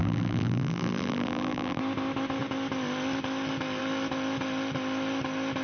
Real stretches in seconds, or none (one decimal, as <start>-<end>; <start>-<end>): 1.8-5.6